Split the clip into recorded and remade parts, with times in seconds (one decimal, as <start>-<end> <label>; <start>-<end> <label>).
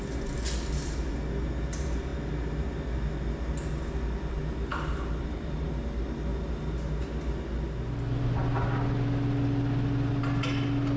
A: 0.0-4.7 recorded; 4.7-5.5 remade; 5.5-11.0 recorded